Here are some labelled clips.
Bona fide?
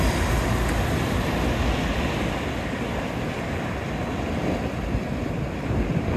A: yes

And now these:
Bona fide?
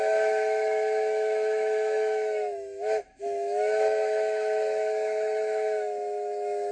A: no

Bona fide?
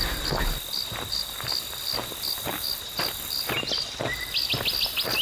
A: yes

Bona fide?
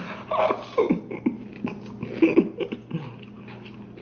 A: yes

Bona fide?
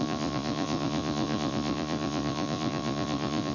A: no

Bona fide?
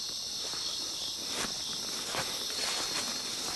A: yes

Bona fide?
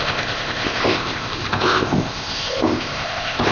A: no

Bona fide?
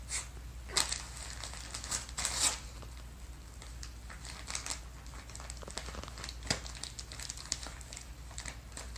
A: yes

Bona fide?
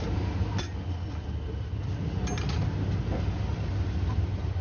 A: yes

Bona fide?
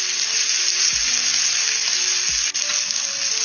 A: yes